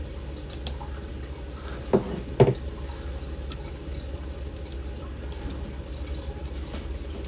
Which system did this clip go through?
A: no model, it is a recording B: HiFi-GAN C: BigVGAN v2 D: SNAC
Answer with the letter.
A